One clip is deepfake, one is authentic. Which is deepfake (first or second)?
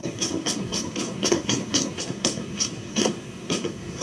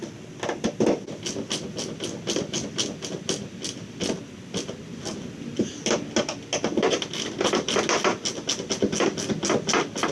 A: first